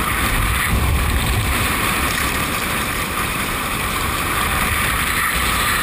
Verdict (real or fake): fake